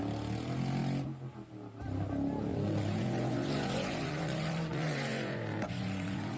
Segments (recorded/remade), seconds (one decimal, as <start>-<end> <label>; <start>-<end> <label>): 0.0-2.5 recorded; 2.5-6.4 remade